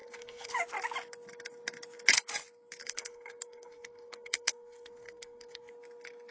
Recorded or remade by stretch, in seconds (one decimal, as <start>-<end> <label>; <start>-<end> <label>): 0.0-0.5 remade; 0.5-2.8 recorded; 2.8-5.7 remade; 5.7-6.3 recorded